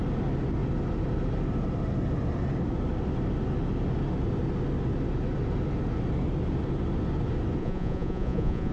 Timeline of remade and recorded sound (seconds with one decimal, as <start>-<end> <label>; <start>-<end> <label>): 0.0-7.6 recorded; 7.6-8.7 remade